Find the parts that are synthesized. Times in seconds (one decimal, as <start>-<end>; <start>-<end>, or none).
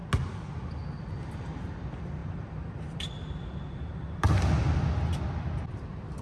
none